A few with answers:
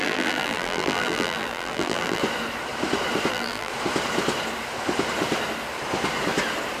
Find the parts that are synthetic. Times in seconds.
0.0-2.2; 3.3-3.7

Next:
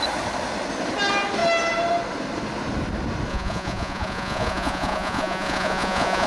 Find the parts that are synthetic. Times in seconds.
3.3-6.3

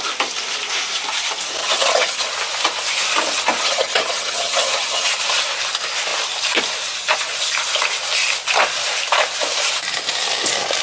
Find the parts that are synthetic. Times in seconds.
1.6-2.3; 3.6-5.1

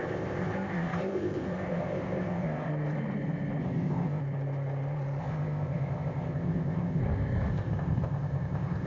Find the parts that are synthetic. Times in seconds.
0.0-2.7; 3.6-4.2; 5.2-7.0; 7.5-8.9

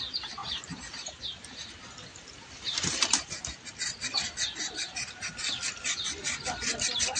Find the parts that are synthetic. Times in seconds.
0.4-1.2; 2.1-3.3